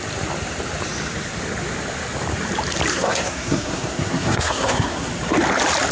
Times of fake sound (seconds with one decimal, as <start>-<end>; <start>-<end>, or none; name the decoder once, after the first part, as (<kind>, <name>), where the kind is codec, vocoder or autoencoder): 2.9-5.1 (codec, SNAC)